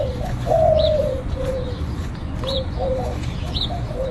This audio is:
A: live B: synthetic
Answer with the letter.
B